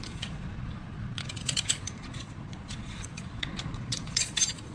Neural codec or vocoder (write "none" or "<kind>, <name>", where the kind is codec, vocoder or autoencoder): vocoder, Vocos